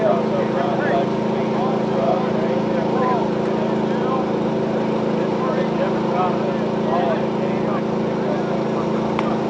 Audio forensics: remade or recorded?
recorded